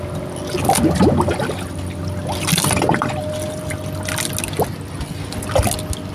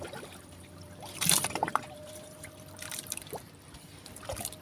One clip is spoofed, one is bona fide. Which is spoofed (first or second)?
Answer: second